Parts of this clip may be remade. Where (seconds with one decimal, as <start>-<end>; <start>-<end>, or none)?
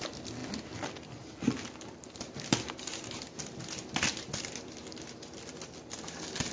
none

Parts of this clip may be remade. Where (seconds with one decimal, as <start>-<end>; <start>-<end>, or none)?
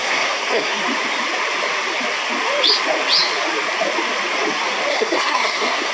0.0-0.8; 4.9-5.9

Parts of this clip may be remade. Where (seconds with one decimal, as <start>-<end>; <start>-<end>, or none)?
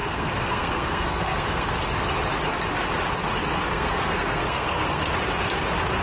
0.0-1.8; 3.7-5.0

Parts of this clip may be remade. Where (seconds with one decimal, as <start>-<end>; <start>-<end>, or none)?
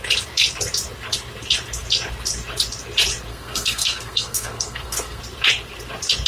3.3-5.2